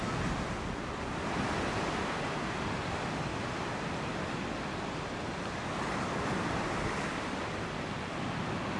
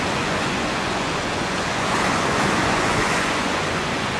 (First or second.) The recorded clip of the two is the first